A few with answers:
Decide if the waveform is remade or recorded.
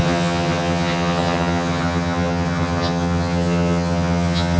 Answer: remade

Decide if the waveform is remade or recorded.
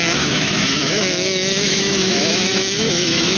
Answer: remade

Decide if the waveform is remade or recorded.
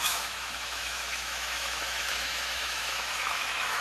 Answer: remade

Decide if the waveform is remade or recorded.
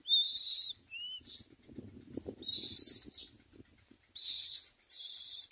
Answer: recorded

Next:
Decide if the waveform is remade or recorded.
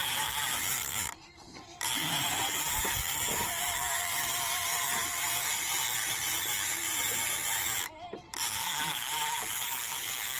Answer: remade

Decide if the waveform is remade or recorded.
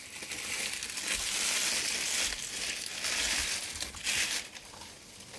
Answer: recorded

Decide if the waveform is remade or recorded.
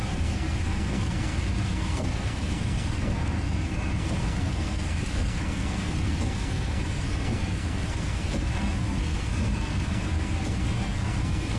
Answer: remade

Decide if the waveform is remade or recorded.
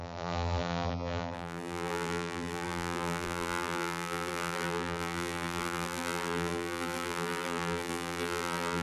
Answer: remade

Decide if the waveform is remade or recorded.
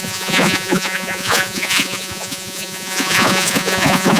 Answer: remade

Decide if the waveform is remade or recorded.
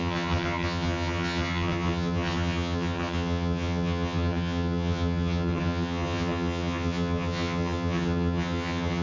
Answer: remade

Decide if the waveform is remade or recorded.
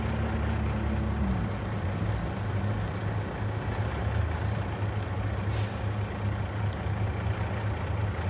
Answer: recorded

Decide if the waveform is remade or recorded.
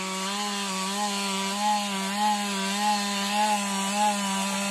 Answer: recorded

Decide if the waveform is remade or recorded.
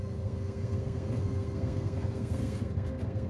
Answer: remade